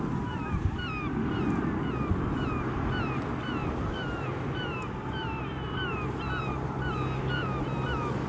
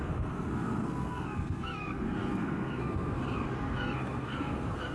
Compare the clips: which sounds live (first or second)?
first